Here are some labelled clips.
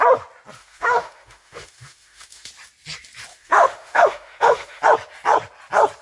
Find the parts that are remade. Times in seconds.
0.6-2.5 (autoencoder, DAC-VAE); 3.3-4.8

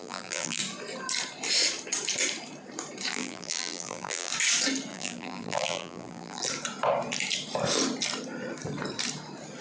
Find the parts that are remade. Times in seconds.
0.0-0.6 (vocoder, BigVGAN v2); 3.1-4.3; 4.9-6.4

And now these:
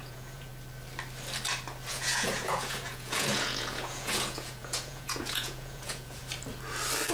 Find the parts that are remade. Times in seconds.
0.0-0.5 (vocoder, Vocos); 1.9-6.2

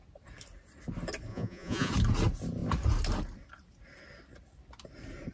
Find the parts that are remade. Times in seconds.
1.3-1.9 (vocoder, Vocos)